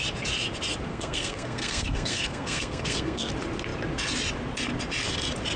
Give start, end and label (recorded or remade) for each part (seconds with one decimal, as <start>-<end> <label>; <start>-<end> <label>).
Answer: 0.0-0.9 recorded; 0.9-3.3 remade; 3.3-5.6 recorded